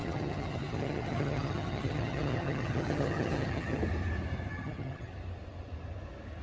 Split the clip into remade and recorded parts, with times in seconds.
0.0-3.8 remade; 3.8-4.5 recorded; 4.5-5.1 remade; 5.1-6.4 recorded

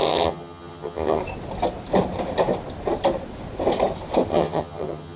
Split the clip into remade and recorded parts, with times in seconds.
0.0-1.2 remade; 1.2-4.3 recorded; 4.3-5.2 remade

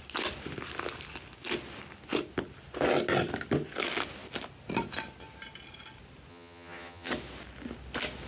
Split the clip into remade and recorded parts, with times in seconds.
0.0-6.3 recorded; 6.3-7.1 remade; 7.1-8.3 recorded

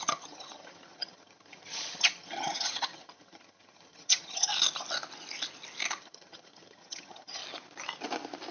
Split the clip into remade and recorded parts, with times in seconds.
0.0-4.5 remade; 4.5-6.0 recorded; 6.0-7.4 remade; 7.4-8.5 recorded